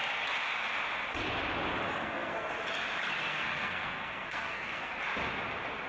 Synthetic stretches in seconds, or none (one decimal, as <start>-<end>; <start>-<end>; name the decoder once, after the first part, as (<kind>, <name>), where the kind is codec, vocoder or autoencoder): 2.0-2.5 (codec, SNAC); 3.2-4.9